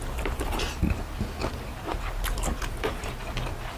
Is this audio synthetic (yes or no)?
no